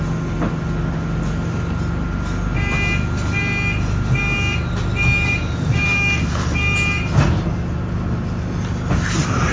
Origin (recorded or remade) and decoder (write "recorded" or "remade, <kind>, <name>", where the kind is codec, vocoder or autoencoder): recorded